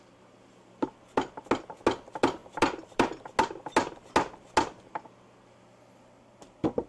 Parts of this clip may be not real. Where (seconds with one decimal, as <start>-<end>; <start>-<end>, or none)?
none